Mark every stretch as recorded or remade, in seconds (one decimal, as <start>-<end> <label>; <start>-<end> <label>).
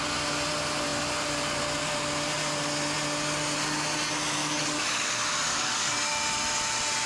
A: 0.0-4.4 recorded; 4.4-5.1 remade; 5.1-5.5 recorded; 5.5-6.1 remade; 6.1-7.1 recorded